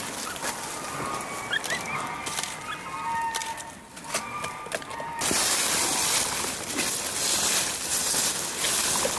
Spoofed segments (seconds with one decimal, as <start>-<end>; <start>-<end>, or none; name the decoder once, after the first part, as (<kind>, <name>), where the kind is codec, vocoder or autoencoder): 3.4-4.7 (vocoder, BigVGAN v2)